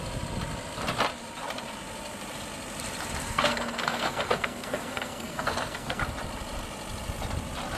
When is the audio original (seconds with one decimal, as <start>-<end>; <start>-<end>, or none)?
0.0-3.2; 6.0-7.8